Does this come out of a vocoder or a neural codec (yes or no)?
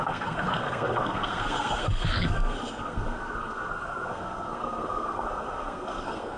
yes